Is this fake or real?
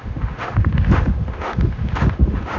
fake